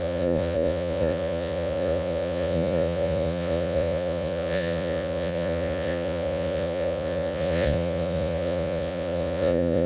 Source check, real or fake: fake